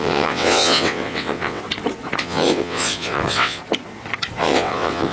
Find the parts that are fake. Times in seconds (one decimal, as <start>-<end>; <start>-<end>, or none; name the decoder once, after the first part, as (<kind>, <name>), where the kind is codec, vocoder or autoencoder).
0.0-1.6 (vocoder, WaveNeXt); 2.2-3.6; 4.4-5.1